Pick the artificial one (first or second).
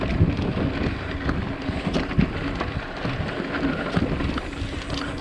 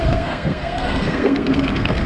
second